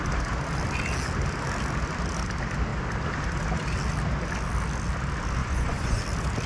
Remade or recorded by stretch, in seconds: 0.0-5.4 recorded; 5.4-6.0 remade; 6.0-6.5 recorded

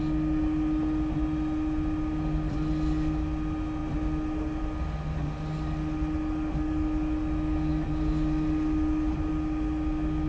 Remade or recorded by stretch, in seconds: 0.0-10.3 recorded

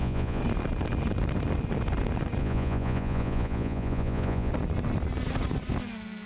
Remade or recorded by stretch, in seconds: 0.0-0.4 remade; 0.4-2.4 recorded; 2.4-4.5 remade; 4.5-6.3 recorded